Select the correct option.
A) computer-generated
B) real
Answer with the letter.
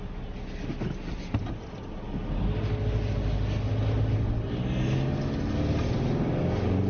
B